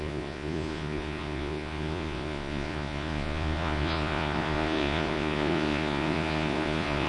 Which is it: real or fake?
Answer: fake